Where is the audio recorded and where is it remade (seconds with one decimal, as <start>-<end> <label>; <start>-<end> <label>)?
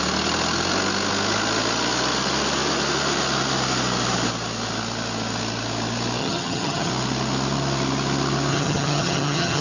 0.0-6.2 recorded; 6.2-6.9 remade; 6.9-8.5 recorded; 8.5-9.6 remade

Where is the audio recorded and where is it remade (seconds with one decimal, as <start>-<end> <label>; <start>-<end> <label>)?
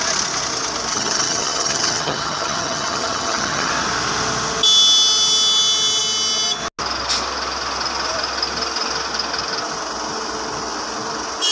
0.0-0.9 recorded; 0.9-3.7 remade; 3.7-11.5 recorded